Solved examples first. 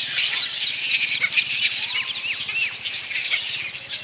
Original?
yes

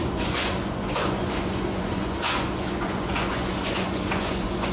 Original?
no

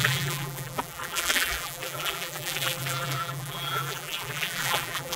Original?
no